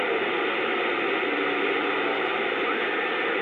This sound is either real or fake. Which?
real